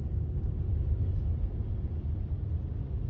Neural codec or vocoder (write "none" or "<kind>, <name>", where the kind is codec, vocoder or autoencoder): none